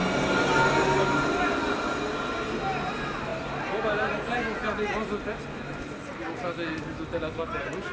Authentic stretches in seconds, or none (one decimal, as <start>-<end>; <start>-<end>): 0.0-7.9